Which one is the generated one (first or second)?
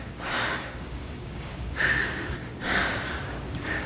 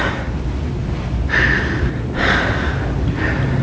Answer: first